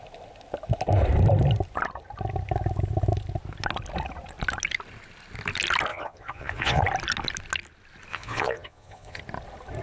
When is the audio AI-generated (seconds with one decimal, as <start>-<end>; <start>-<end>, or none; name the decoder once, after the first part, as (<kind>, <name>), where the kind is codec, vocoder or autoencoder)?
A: 5.9-6.8 (vocoder, Vocos); 8.1-9.2